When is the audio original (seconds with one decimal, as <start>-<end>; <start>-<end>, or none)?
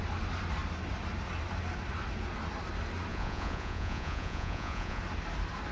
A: 0.0-3.1; 5.0-5.7